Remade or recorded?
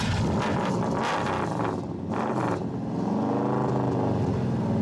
recorded